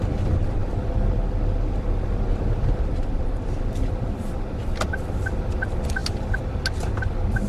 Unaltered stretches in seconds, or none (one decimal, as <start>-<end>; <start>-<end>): 0.0-0.6; 5.1-7.5